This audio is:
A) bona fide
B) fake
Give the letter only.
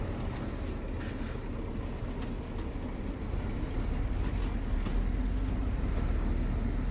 A